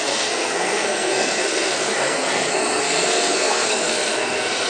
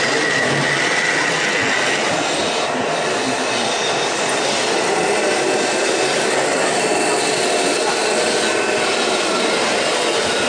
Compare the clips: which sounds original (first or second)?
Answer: second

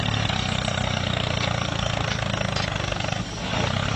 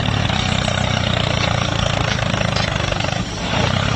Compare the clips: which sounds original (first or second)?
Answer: first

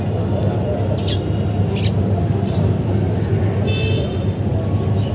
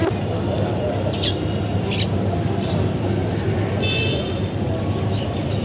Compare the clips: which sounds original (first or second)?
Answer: first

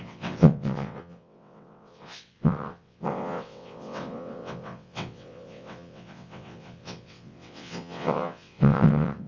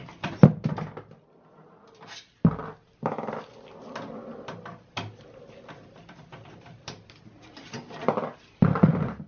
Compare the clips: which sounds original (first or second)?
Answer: second